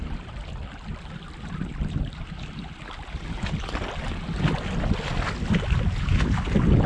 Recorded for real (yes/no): yes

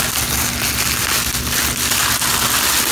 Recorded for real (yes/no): yes